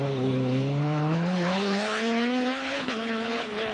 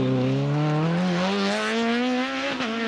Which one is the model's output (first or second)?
first